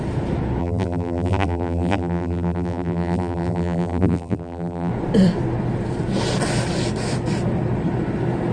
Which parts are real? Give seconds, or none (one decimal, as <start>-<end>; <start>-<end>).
0.0-0.6; 4.9-8.5